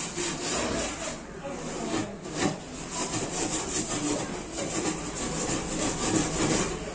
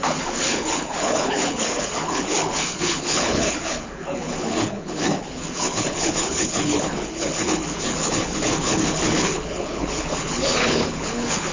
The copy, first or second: second